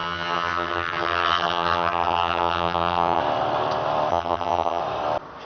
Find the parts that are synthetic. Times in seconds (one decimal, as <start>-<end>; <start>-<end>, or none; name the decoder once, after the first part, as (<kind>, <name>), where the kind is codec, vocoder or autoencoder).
0.0-3.2 (vocoder, HiFi-GAN); 4.1-4.8